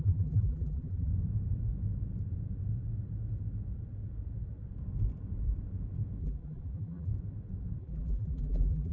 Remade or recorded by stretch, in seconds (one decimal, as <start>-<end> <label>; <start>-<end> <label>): 0.0-1.1 remade; 1.1-6.2 recorded; 6.2-7.1 remade; 7.1-7.8 recorded; 7.8-8.9 remade